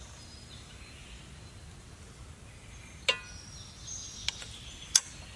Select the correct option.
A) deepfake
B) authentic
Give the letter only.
B